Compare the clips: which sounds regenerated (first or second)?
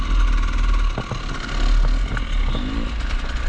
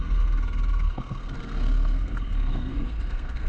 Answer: second